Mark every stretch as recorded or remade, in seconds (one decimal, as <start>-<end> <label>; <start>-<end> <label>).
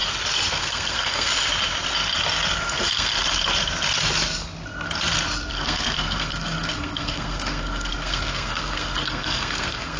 0.0-0.5 recorded; 0.5-1.3 remade; 1.3-2.6 recorded; 2.6-3.1 remade; 3.1-5.5 recorded; 5.5-10.0 remade